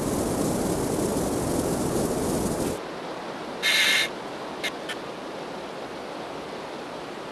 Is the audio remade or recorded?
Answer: recorded